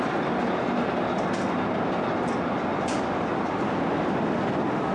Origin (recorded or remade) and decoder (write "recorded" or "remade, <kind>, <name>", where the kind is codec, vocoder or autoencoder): recorded